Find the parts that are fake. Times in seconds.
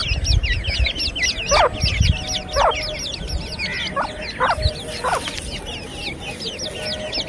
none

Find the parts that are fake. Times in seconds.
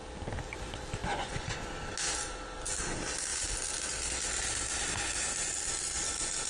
1.0-1.7 (vocoder, Vocos)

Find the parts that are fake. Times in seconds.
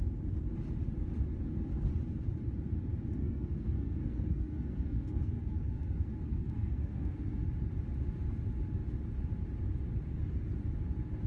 3.2-7.4 (codec, SNAC)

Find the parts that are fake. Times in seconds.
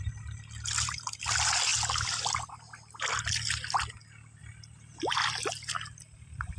none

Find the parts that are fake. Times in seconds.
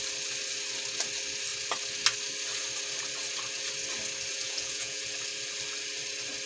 4.3-5.0 (vocoder, Vocos)